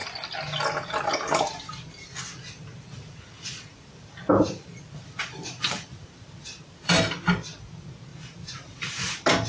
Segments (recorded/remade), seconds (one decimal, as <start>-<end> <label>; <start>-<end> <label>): 0.0-2.7 recorded; 2.7-7.0 remade; 7.0-8.1 recorded; 8.1-9.1 remade; 9.1-9.5 recorded

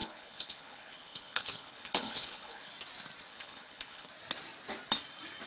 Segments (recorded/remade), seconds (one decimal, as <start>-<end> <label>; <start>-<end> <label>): 0.0-2.7 remade; 2.7-3.3 recorded; 3.3-4.1 remade; 4.1-5.5 recorded

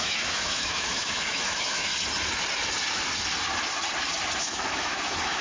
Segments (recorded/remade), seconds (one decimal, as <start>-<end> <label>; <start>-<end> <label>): 0.0-1.9 remade; 1.9-4.4 recorded; 4.4-5.4 remade

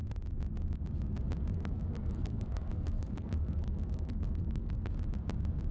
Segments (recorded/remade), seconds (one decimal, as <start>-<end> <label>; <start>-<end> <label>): 0.0-1.5 recorded; 1.5-4.9 remade; 4.9-5.7 recorded

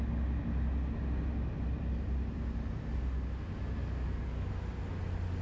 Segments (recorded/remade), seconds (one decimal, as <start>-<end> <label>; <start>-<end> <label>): 0.0-3.8 recorded; 3.8-4.5 remade; 4.5-5.4 recorded